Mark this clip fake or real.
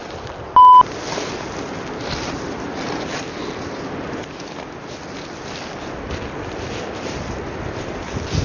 real